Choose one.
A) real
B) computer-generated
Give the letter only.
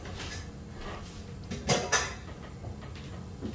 A